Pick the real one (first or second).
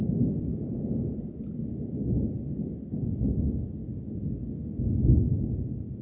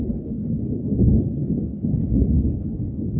first